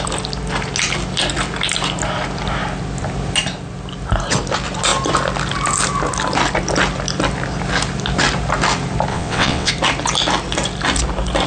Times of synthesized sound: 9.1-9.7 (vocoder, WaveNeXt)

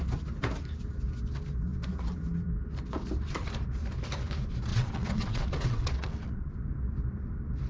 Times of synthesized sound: 4.7-6.5 (vocoder, WaveNeXt)